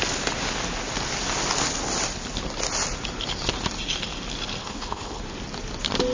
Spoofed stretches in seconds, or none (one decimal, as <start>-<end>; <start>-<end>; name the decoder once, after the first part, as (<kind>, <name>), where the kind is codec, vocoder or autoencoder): 4.6-5.2 (codec, HILCodec)